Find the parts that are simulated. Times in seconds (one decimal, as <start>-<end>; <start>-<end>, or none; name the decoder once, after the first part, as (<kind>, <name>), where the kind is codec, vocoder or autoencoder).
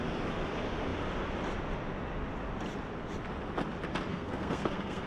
4.1-5.1 (codec, SNAC)